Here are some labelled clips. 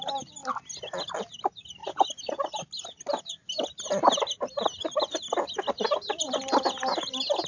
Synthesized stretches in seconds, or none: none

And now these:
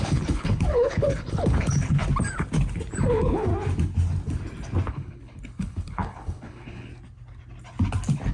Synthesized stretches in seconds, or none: 0.0-2.0; 3.1-3.5; 4.9-6.9